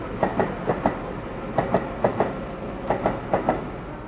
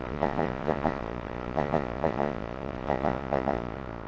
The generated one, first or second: second